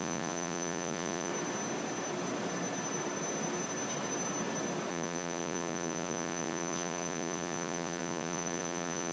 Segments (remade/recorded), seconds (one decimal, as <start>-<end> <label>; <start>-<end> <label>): 0.0-1.3 remade; 1.3-4.9 recorded; 4.9-9.1 remade